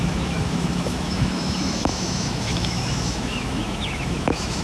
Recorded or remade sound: remade